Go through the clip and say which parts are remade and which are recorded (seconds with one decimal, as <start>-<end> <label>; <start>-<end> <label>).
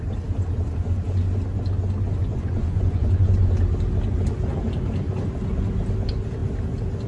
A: 0.0-2.2 recorded; 2.2-3.5 remade; 3.5-7.1 recorded